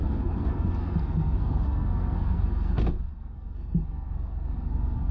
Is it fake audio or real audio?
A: fake